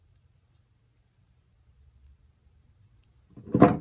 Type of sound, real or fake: fake